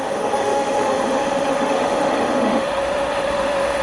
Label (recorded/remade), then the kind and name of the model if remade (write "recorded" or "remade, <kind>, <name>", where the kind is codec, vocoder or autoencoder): remade, autoencoder, DAC-VAE